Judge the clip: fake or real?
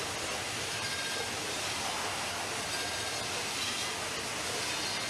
real